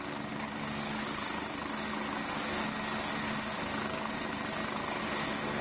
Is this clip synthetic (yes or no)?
no